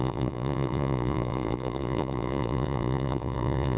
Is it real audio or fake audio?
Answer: fake